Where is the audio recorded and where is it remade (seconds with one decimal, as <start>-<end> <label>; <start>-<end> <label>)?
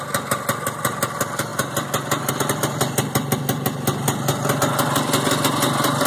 0.0-6.1 recorded